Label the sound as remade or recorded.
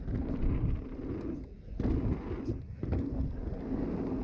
recorded